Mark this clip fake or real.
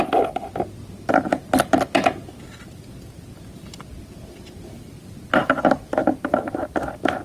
real